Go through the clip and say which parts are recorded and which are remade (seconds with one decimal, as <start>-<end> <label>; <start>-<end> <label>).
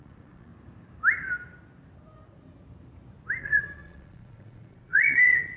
0.0-0.5 remade; 0.5-3.4 recorded; 3.4-5.6 remade